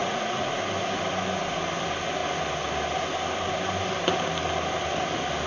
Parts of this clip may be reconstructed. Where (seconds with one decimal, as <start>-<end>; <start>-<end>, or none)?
0.0-0.5